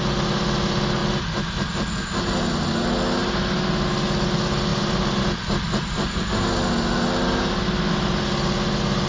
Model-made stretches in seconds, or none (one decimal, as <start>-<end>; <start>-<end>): 4.7-5.2